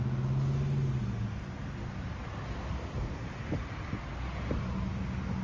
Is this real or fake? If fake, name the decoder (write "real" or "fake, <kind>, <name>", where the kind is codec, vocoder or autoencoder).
real